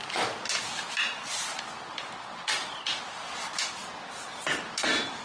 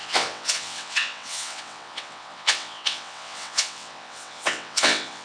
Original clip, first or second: first